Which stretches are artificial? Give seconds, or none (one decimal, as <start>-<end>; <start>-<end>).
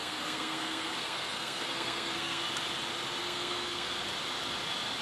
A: 0.0-2.4; 3.2-4.0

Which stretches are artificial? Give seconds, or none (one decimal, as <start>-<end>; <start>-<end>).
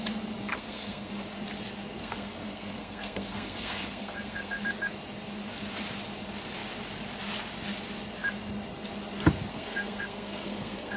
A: 0.5-1.1; 2.0-4.6; 9.5-11.0